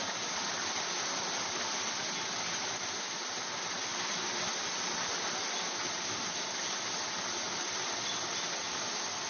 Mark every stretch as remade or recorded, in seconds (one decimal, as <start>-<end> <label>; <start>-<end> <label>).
0.0-9.3 recorded